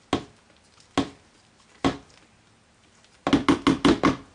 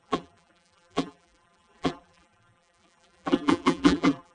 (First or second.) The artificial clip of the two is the second